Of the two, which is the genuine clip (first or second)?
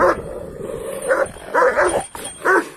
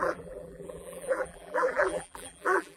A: first